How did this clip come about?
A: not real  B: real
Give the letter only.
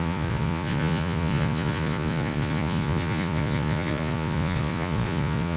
A